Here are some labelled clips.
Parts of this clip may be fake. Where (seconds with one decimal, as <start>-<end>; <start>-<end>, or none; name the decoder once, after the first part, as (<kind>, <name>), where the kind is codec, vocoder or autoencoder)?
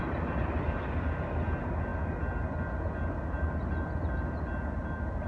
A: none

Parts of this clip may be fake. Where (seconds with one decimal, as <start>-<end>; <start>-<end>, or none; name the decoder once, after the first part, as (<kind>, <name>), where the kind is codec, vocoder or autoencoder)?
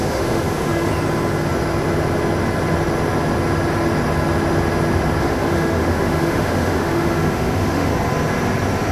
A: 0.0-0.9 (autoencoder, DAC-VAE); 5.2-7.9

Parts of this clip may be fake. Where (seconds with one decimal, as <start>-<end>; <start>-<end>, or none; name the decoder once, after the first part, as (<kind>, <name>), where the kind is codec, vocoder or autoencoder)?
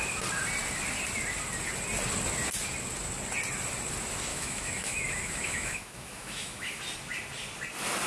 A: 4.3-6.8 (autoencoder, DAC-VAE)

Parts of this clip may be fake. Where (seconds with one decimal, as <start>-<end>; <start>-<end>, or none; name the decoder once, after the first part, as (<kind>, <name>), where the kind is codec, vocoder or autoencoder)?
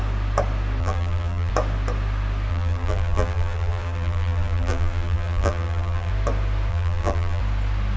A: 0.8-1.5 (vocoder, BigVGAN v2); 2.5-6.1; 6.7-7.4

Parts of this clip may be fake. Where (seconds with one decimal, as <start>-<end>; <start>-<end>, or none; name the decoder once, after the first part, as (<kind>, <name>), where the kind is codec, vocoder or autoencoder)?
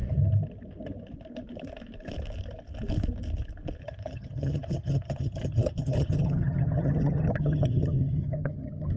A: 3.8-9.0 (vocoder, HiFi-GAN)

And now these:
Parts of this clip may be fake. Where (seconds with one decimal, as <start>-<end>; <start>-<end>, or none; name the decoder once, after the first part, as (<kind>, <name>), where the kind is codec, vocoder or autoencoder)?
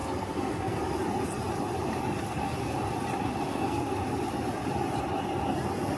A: 0.0-0.8 (codec, SNAC); 3.5-4.0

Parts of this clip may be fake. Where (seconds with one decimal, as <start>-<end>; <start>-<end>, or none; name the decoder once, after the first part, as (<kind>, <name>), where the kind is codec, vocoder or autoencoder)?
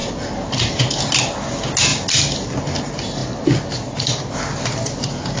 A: none